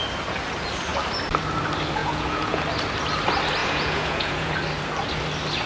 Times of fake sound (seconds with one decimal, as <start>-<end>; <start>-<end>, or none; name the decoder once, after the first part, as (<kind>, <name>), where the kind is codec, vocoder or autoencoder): 2.0-2.6 (vocoder, Vocos); 3.6-4.5

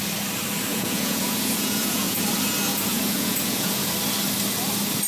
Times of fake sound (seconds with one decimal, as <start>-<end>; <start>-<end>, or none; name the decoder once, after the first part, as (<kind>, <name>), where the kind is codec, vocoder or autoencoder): 0.7-2.2 (vocoder, Vocos); 2.7-3.9